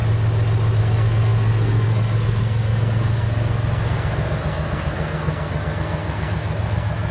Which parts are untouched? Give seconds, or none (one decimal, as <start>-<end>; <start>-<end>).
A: 0.0-0.8